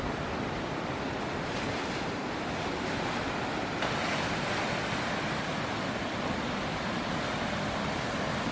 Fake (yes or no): no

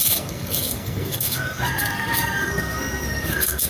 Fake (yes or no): yes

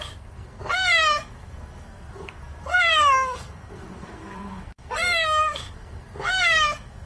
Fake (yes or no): yes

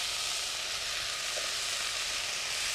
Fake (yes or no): no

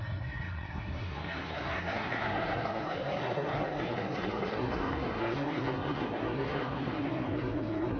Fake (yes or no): yes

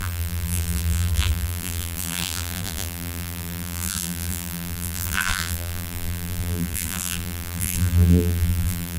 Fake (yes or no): yes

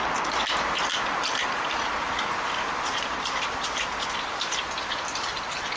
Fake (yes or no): no